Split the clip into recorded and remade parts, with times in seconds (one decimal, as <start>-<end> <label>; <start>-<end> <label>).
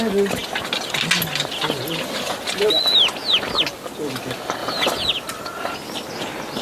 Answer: 0.0-6.6 recorded